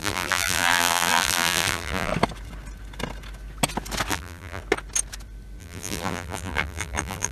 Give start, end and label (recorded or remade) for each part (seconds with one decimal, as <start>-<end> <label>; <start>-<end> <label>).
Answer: 0.0-2.1 remade; 2.1-4.1 recorded; 4.1-4.6 remade; 4.6-5.6 recorded; 5.6-7.3 remade